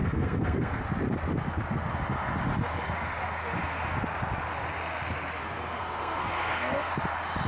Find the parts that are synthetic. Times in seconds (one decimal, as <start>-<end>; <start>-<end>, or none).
0.0-0.8; 5.4-6.9

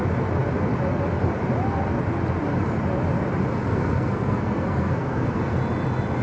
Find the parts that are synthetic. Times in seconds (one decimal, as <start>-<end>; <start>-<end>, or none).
3.7-5.6

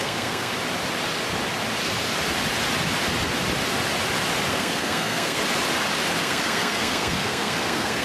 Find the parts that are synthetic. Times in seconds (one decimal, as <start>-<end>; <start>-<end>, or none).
0.0-0.5; 4.5-5.4; 6.2-8.0

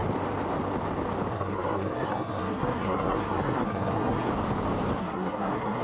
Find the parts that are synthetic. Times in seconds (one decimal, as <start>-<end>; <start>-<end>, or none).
1.3-4.3; 5.0-5.8

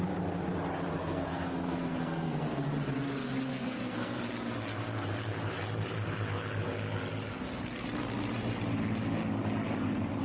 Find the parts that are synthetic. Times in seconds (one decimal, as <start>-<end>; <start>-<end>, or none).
1.0-2.7; 3.5-4.2